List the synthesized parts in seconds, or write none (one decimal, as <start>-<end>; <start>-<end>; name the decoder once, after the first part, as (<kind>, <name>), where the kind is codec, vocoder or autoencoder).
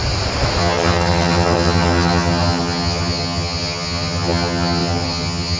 0.6-5.6 (vocoder, HiFi-GAN)